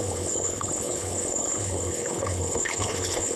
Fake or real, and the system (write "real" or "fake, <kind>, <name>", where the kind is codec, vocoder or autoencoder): fake, codec, HILCodec